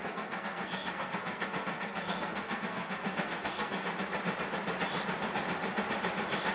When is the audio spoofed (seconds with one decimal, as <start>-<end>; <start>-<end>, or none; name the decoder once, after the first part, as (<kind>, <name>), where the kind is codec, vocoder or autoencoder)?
0.0-3.9 (codec, SNAC)